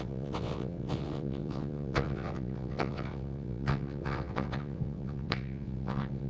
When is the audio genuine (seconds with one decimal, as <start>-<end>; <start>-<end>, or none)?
none